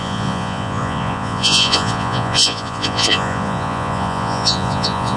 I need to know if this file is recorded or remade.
remade